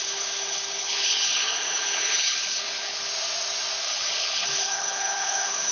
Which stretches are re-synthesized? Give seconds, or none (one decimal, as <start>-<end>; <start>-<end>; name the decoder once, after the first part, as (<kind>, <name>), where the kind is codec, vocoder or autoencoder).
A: 0.0-3.1 (codec, HILCodec); 3.8-5.7